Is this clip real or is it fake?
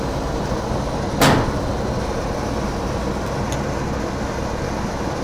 real